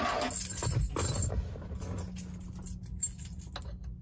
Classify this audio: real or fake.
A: real